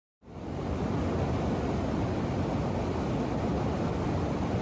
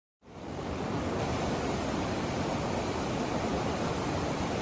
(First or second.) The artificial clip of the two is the second